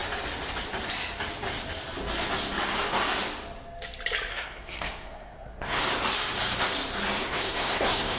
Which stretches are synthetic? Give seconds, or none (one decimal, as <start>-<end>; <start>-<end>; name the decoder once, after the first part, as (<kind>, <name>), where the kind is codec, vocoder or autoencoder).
4.3-5.8 (codec, SNAC); 7.2-8.2